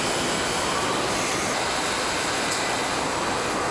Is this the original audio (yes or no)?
yes